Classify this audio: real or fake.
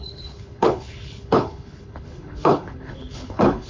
fake